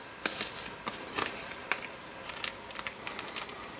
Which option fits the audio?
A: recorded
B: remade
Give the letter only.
A